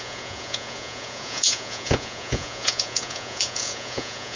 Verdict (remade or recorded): remade